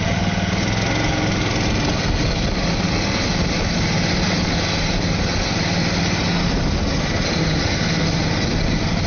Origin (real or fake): real